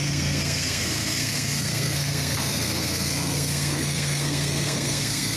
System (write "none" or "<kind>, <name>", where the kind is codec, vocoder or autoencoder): codec, SNAC